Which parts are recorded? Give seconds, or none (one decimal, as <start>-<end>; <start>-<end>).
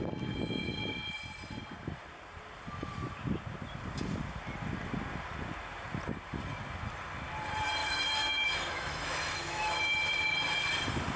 0.0-7.8; 9.8-11.2